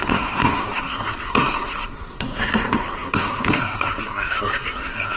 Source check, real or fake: fake